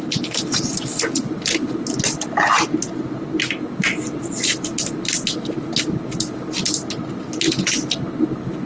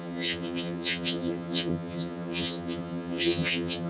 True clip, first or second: first